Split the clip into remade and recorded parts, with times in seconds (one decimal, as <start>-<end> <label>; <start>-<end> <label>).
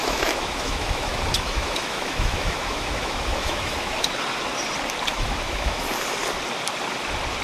0.0-4.1 remade; 4.1-5.1 recorded; 5.1-5.8 remade; 5.8-7.4 recorded